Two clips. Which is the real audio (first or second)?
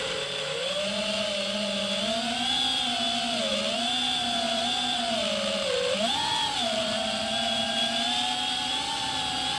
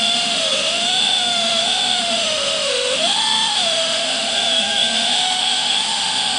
first